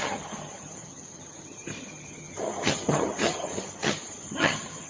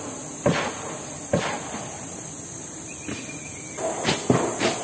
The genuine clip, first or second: second